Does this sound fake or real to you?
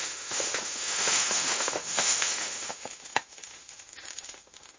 fake